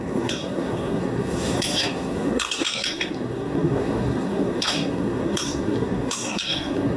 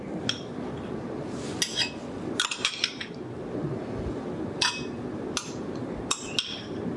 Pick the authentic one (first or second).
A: second